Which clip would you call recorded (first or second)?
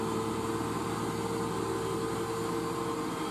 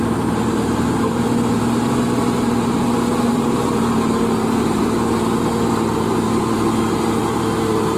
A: first